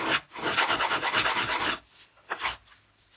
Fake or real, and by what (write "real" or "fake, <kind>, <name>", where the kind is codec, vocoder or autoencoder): real